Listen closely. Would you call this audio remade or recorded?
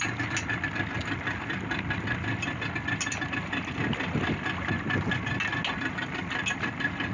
recorded